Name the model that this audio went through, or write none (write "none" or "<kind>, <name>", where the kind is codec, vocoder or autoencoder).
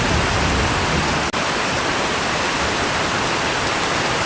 vocoder, BigVGAN v2